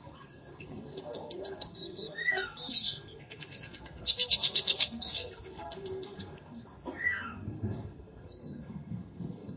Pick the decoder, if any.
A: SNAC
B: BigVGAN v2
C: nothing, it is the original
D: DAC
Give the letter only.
A